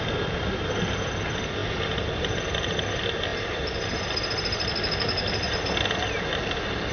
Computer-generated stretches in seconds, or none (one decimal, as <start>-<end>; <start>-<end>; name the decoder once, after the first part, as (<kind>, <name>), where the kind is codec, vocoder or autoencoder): none